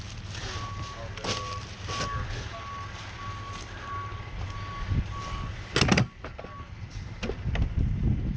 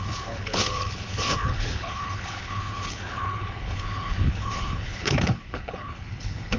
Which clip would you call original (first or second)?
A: first